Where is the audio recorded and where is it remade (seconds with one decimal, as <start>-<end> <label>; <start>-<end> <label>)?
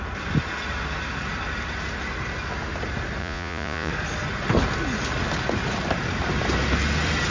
0.0-3.2 recorded; 3.2-3.9 remade; 3.9-7.3 recorded